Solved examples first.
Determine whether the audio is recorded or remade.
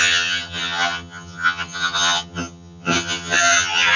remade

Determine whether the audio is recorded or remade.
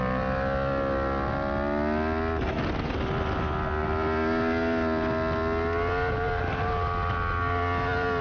recorded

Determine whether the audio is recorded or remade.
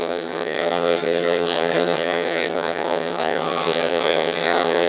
remade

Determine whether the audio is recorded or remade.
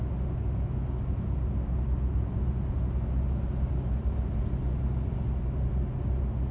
recorded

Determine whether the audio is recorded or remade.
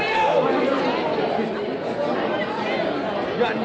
recorded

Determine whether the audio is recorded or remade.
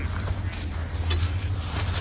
recorded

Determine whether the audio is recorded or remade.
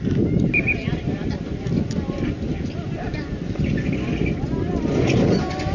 recorded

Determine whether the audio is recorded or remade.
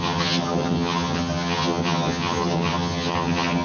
remade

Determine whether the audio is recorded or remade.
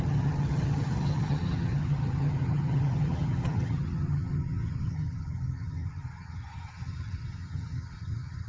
remade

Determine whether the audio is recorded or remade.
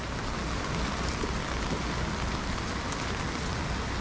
recorded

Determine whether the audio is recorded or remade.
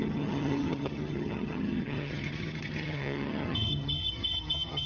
remade